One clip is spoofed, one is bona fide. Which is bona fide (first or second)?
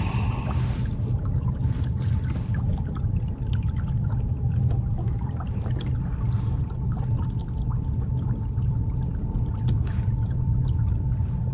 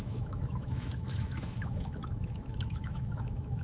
first